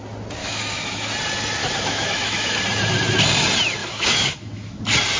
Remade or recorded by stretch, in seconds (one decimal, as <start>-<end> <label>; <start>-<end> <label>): 0.0-0.4 recorded; 0.4-1.1 remade; 1.1-1.6 recorded; 1.6-2.6 remade; 2.6-3.8 recorded; 3.8-4.8 remade; 4.8-5.2 recorded